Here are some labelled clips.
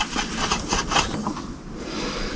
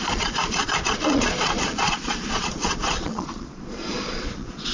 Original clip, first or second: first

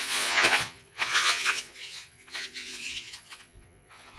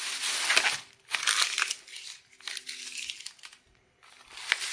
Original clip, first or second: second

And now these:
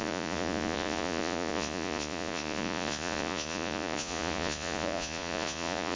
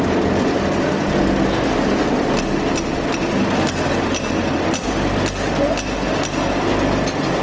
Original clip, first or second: second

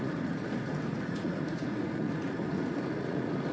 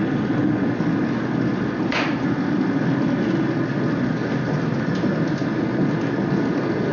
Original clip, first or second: second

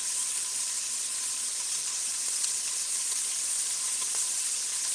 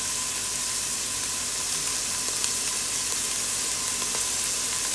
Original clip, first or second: second